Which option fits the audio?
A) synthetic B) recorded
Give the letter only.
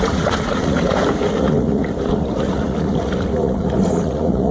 A